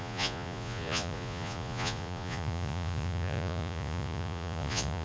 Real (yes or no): no